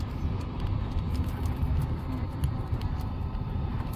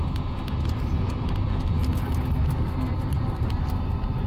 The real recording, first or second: second